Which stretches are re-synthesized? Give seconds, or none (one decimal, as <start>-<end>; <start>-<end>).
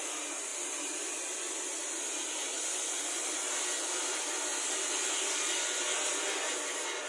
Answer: none